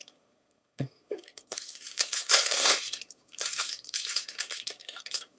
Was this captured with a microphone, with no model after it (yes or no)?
no